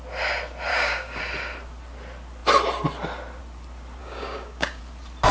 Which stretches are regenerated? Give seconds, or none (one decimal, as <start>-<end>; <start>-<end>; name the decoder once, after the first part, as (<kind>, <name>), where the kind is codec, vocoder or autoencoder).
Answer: 0.7-1.2 (codec, DAC); 4.0-4.8